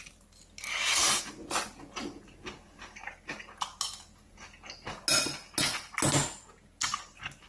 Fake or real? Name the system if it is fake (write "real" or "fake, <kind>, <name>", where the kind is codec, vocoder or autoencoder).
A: real